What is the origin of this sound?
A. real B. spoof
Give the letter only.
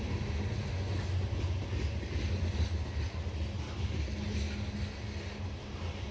A